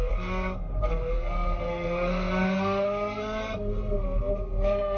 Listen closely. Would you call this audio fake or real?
fake